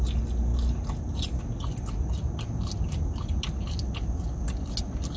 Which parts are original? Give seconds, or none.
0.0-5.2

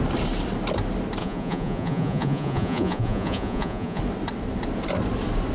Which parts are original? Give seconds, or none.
0.0-1.2; 4.0-5.5

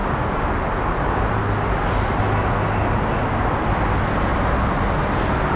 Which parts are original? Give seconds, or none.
0.0-5.6